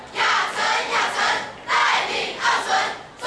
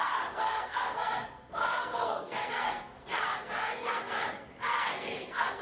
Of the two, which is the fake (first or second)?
second